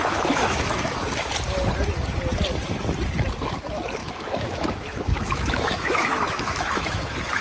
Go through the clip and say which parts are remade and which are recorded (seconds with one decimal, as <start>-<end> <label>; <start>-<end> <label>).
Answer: 0.0-1.3 remade; 1.3-4.0 recorded; 4.0-7.4 remade